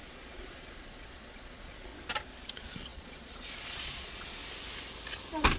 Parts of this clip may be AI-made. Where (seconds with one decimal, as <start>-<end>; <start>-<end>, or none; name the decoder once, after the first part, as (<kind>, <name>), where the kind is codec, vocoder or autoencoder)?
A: 0.0-1.9 (vocoder, Vocos); 2.5-4.4